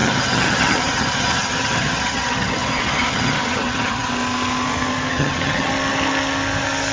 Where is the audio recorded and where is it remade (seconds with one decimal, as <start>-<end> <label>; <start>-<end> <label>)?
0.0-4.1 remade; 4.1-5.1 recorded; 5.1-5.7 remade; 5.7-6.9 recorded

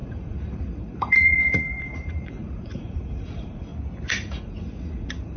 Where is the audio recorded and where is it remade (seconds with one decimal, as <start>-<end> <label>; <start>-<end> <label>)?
0.0-3.7 remade; 3.7-4.2 recorded; 4.2-5.4 remade

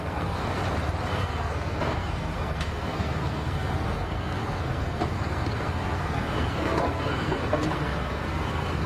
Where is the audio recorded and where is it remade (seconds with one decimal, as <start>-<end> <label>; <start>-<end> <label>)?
0.0-0.6 remade; 0.6-1.1 recorded; 1.1-8.9 remade